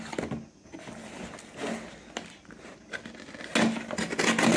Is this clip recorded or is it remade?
recorded